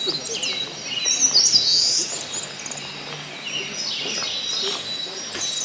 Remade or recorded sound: recorded